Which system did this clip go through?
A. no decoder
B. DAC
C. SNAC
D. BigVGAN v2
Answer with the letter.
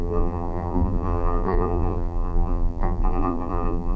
D